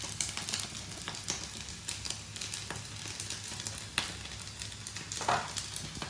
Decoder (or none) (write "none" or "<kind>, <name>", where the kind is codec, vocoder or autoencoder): none